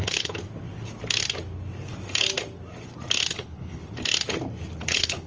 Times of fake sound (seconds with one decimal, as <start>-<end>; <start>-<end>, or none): 0.0-0.4; 3.3-3.8; 4.8-5.3